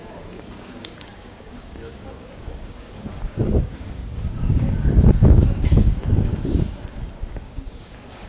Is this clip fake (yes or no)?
yes